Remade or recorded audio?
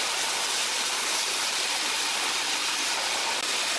recorded